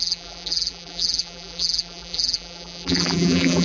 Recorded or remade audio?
remade